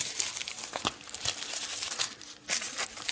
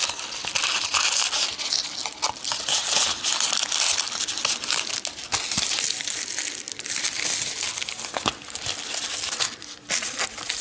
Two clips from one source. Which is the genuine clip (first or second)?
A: second